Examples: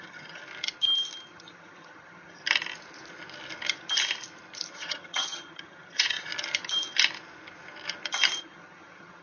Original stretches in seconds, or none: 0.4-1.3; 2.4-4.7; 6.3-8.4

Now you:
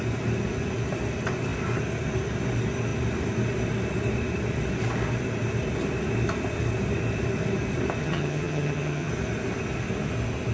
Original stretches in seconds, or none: 0.0-8.0; 9.1-10.5

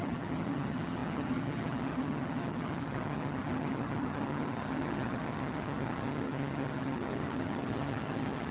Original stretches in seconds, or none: none